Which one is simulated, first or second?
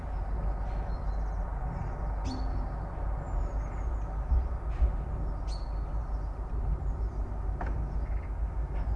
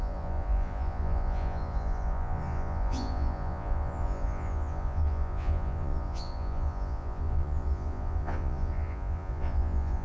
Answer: second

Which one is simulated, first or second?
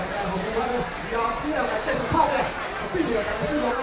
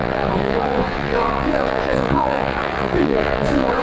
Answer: second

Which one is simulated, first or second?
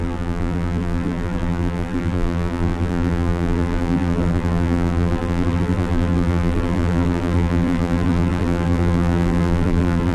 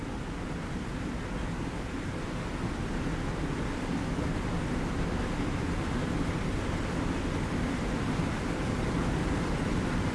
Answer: first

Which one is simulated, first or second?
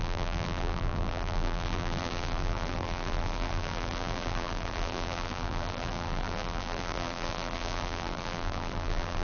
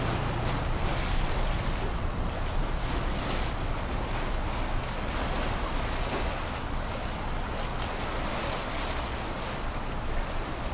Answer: first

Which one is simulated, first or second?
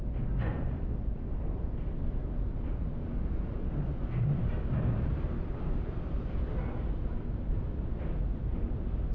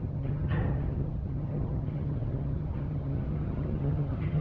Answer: second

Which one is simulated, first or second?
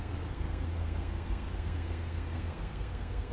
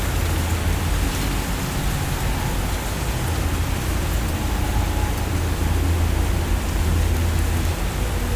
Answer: first